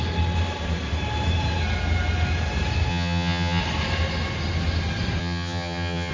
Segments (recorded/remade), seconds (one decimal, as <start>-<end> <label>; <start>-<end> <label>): 0.0-2.9 recorded; 2.9-3.6 remade; 3.6-5.2 recorded; 5.2-6.1 remade

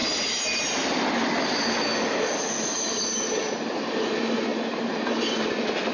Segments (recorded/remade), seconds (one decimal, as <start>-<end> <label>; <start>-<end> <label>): 0.0-5.9 recorded

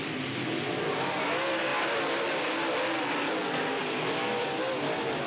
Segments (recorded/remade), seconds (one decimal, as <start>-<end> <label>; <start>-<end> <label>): 0.0-5.3 recorded

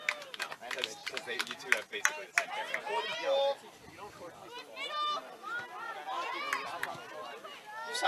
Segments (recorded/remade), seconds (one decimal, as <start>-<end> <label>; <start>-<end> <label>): 0.0-8.1 recorded

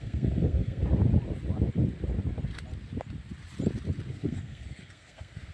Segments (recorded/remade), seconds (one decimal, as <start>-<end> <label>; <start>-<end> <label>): 0.0-0.8 remade; 0.8-4.1 recorded; 4.1-5.5 remade

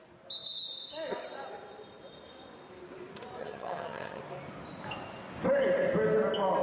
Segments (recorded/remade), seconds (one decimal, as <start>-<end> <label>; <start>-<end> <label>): 0.0-3.4 recorded; 3.4-4.2 remade; 4.2-6.6 recorded

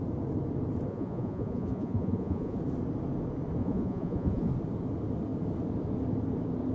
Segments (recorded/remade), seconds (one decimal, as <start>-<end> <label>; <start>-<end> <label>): 0.0-0.9 recorded; 0.9-2.6 remade; 2.6-3.6 recorded; 3.6-4.5 remade; 4.5-6.7 recorded

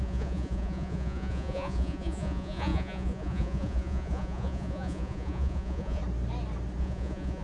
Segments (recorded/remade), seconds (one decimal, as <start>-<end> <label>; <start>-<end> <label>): 0.0-6.0 remade; 6.0-6.8 recorded; 6.8-7.4 remade